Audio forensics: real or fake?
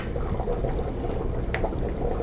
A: real